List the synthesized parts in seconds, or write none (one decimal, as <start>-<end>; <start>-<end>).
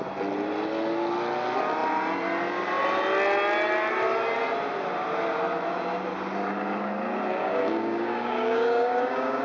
7.4-9.4